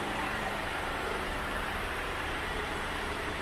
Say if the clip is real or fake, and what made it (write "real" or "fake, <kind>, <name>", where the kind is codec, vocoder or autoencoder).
fake, vocoder, BigVGAN v2